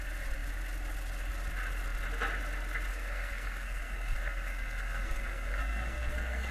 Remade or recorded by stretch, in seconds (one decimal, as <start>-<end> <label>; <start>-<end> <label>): 0.0-2.9 recorded; 2.9-6.5 remade

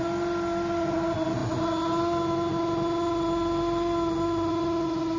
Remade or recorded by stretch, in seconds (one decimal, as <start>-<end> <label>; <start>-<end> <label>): 0.0-5.2 recorded

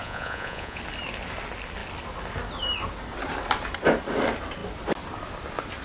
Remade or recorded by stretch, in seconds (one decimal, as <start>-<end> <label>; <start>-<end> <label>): 0.0-0.8 remade; 0.8-5.8 recorded

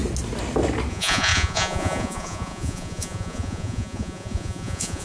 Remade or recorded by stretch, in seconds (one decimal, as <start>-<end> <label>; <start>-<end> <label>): 0.0-0.9 recorded; 0.9-5.0 remade

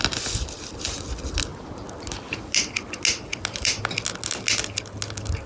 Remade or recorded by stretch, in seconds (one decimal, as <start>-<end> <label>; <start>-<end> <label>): 0.0-5.5 recorded

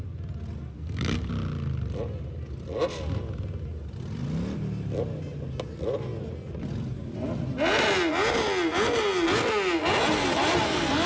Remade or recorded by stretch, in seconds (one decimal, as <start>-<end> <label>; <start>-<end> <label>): 0.0-0.7 recorded; 0.7-1.3 remade; 1.3-11.1 recorded

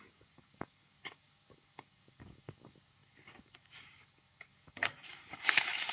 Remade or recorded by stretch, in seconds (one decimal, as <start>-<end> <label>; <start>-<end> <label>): 0.0-5.9 remade

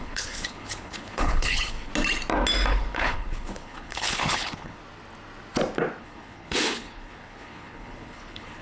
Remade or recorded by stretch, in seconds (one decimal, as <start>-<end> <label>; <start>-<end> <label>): 0.0-1.9 remade; 1.9-2.7 recorded; 2.7-4.8 remade; 4.8-6.0 recorded; 6.0-8.6 remade